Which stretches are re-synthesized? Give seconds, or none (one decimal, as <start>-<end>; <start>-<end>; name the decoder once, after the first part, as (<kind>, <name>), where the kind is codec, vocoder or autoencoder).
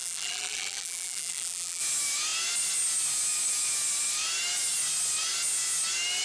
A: 0.0-1.8 (vocoder, BigVGAN v2)